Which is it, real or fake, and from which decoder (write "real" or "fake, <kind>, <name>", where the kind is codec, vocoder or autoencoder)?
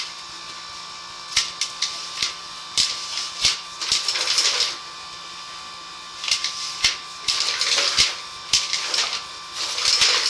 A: real